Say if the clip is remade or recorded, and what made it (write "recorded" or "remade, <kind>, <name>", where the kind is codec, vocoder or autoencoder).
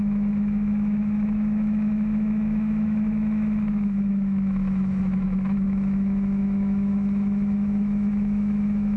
remade, autoencoder, DAC-VAE